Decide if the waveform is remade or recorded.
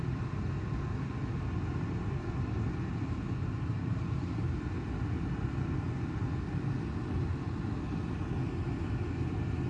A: recorded